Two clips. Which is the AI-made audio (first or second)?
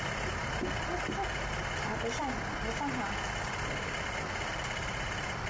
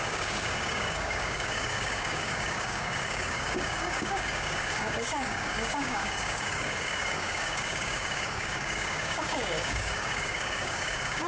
second